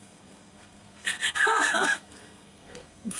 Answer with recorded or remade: remade